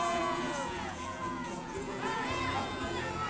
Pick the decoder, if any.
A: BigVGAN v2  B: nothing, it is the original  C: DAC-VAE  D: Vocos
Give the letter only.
D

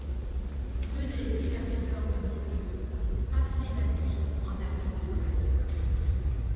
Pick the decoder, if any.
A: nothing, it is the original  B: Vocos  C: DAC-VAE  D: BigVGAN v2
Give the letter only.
B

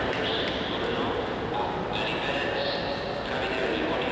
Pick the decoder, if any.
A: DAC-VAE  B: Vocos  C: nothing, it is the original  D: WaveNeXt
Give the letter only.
C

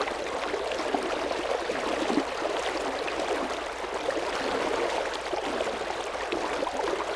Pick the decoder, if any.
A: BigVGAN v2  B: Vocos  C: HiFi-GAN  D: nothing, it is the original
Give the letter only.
D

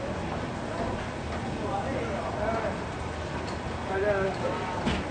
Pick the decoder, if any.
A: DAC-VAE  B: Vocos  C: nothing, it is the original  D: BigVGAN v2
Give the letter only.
C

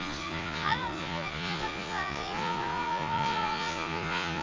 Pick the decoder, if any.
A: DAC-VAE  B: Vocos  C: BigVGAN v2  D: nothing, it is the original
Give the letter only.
B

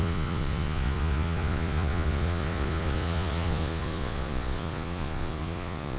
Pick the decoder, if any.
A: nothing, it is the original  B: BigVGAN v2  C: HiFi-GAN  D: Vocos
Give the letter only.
D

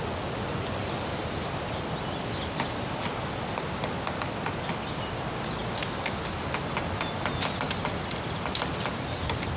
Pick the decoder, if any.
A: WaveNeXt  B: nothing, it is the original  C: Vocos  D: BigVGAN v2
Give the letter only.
B